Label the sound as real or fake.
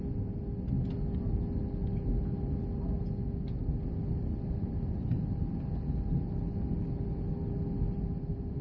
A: real